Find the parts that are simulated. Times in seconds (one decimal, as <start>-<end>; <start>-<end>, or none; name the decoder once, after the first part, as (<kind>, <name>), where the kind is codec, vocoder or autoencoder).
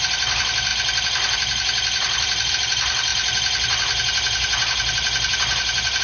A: none